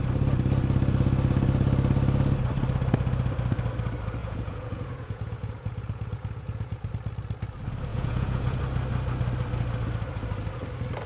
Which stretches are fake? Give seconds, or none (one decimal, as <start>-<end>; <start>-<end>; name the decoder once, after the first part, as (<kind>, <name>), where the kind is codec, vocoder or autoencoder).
4.2-6.9 (vocoder, Vocos); 7.9-8.6